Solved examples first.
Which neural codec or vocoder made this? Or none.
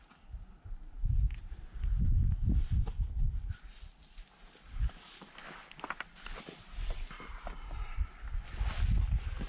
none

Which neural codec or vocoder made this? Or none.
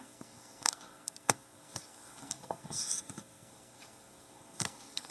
codec, SNAC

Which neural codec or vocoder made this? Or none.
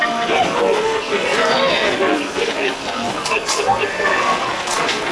codec, SNAC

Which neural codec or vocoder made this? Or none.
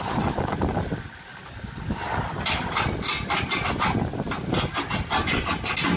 none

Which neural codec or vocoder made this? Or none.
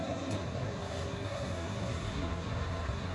codec, SNAC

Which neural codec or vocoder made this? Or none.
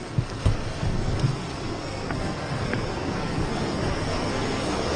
codec, SNAC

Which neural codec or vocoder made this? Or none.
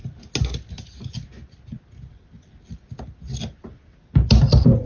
none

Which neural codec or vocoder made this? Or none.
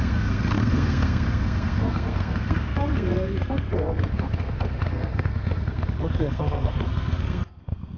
codec, SNAC